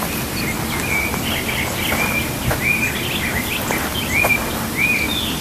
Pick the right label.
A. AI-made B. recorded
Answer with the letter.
B